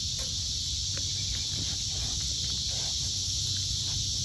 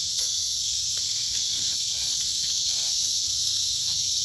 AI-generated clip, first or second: second